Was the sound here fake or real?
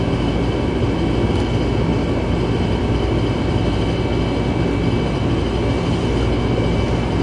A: real